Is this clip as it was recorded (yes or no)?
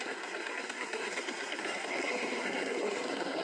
no